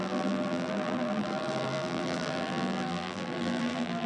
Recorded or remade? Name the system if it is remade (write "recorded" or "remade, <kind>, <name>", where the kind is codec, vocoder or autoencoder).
remade, vocoder, BigVGAN v2